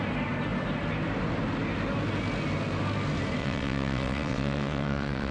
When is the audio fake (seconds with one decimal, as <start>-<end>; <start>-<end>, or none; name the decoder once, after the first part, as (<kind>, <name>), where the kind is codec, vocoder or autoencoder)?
3.4-5.3 (vocoder, WaveNeXt)